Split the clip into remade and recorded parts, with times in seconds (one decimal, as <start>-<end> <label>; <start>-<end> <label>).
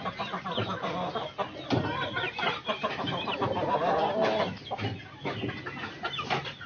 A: 0.0-6.7 recorded